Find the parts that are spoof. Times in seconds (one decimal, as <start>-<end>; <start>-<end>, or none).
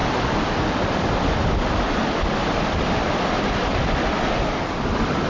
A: none